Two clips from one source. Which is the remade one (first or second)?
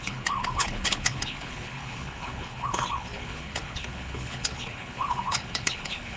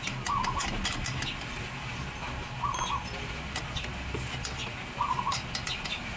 first